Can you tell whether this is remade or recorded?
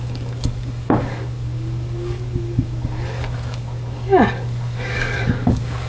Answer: remade